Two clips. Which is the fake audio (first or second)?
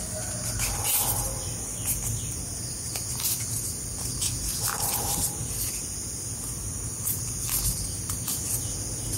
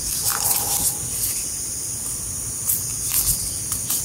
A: second